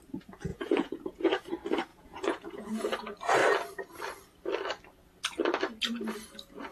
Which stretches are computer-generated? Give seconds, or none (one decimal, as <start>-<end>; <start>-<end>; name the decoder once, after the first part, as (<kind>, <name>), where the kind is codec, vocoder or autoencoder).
0.5-1.5 (vocoder, Vocos); 1.9-2.9